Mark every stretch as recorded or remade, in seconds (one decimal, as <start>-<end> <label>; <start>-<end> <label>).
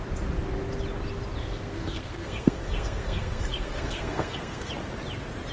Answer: 0.0-1.4 recorded; 1.4-4.7 remade; 4.7-5.5 recorded